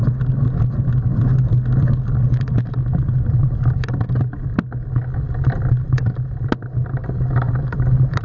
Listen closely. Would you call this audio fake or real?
real